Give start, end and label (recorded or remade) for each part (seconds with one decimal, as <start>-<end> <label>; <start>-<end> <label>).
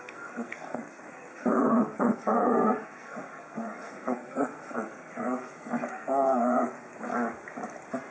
0.0-7.1 remade; 7.1-8.1 recorded